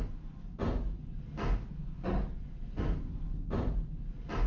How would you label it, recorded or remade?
recorded